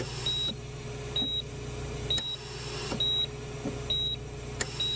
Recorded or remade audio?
recorded